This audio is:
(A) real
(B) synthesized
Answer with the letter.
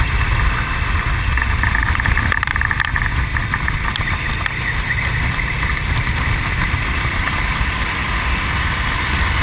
A